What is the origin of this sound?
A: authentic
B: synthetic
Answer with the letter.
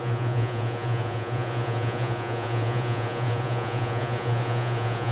B